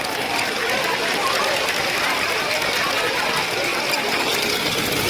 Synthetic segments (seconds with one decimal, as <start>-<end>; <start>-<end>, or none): 0.6-3.1